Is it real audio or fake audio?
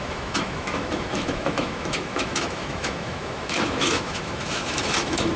fake